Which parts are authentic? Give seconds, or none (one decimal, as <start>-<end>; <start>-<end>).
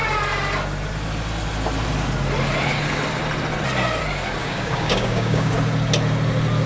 0.0-4.4; 5.5-6.7